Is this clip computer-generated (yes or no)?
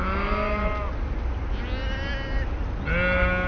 no